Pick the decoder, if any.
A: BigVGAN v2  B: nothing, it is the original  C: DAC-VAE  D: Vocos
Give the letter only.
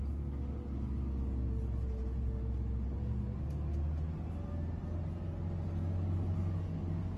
B